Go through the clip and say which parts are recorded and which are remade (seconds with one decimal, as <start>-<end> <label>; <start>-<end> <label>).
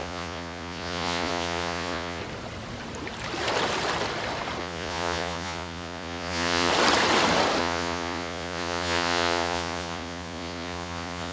0.0-2.2 remade; 2.2-4.6 recorded; 4.6-6.7 remade; 6.7-7.6 recorded; 7.6-11.3 remade